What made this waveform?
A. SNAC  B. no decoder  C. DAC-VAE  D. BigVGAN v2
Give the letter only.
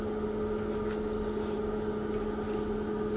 B